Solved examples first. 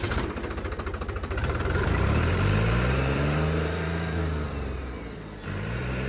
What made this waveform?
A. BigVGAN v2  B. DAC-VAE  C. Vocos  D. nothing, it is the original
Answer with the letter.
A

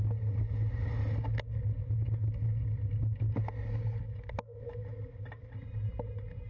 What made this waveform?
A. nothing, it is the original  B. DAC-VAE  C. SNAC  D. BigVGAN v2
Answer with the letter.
A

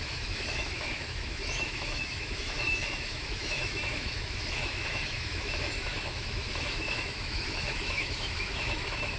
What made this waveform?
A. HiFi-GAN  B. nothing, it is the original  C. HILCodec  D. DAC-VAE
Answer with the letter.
D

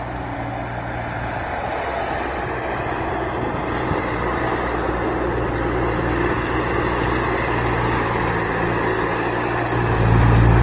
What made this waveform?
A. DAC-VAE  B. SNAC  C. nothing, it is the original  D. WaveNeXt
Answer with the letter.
C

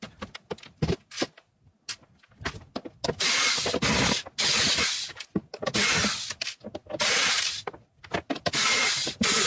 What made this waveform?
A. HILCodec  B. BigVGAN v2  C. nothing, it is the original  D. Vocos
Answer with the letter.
C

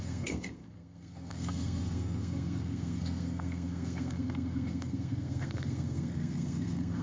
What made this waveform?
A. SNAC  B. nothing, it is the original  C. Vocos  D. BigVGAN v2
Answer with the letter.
A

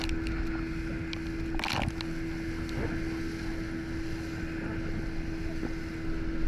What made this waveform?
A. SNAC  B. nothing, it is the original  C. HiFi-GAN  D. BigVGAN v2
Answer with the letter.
B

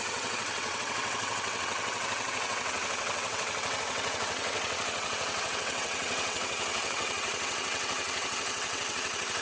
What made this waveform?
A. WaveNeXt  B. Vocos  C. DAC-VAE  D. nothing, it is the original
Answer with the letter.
A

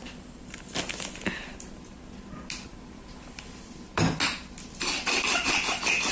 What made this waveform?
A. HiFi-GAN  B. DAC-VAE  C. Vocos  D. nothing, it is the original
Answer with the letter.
D